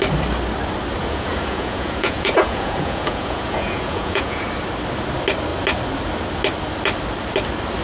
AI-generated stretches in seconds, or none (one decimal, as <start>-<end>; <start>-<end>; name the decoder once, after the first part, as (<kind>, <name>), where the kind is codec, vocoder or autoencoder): 1.0-4.5 (vocoder, Vocos)